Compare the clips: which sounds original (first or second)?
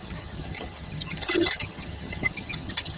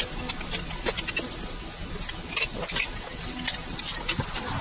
second